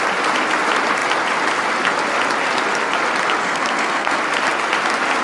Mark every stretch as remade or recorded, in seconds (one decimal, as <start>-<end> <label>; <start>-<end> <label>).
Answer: 0.0-3.4 recorded; 3.4-4.2 remade; 4.2-5.2 recorded